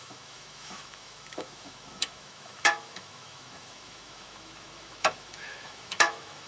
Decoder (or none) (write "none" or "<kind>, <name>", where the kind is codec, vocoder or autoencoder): autoencoder, DAC-VAE